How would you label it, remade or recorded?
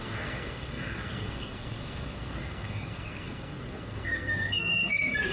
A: remade